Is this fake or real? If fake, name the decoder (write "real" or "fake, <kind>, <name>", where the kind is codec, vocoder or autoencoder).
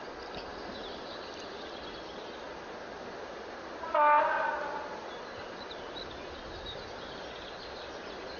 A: real